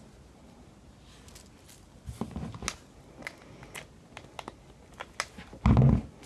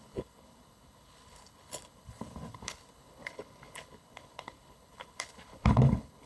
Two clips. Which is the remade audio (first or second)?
second